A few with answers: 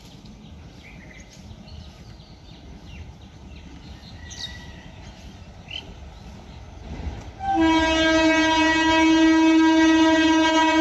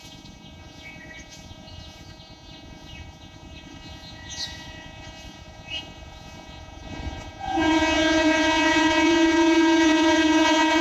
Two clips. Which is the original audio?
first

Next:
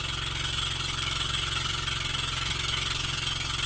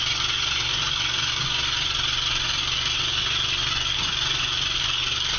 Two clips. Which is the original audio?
first